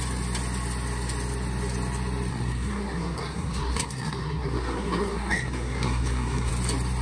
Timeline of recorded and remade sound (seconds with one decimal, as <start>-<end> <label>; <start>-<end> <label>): 0.0-2.3 recorded; 2.3-6.5 remade; 6.5-7.0 recorded